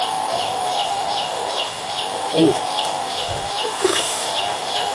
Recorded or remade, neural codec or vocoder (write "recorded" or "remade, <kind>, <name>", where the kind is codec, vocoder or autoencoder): remade, autoencoder, DAC-VAE